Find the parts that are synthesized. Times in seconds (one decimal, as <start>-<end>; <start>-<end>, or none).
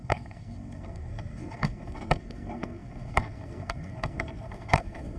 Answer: 0.0-5.2